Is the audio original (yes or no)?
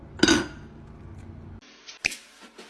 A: yes